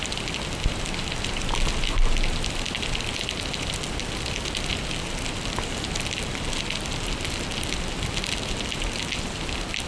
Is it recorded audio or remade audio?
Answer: recorded